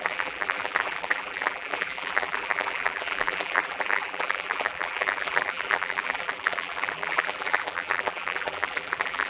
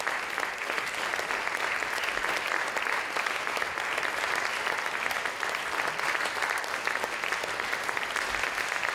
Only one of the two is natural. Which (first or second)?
second